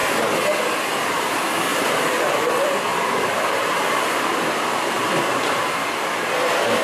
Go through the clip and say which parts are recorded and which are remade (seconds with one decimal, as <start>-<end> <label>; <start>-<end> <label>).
0.0-1.7 recorded; 1.7-2.4 remade; 2.4-2.9 recorded; 2.9-5.8 remade; 5.8-6.8 recorded